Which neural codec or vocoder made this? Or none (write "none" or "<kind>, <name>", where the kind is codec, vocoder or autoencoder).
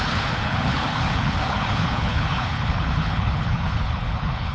codec, HILCodec